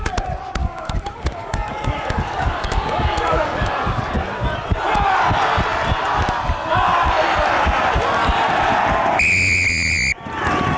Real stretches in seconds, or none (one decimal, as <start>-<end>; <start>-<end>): 0.0-0.6; 3.7-10.8